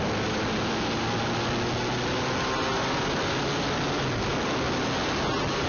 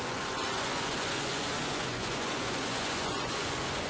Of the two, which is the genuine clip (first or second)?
first